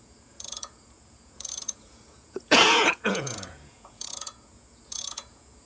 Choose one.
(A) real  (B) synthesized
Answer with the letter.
B